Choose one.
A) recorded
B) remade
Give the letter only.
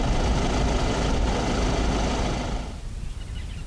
A